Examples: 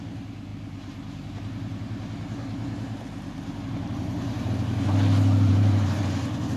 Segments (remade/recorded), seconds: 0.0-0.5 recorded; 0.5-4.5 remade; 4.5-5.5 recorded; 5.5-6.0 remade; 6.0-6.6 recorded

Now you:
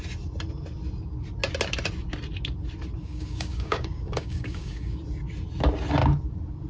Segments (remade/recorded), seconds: 0.0-3.0 recorded; 3.0-5.0 remade; 5.0-6.7 recorded

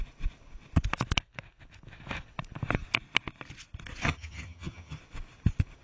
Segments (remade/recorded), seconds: 0.0-4.0 recorded; 4.0-5.0 remade; 5.0-5.8 recorded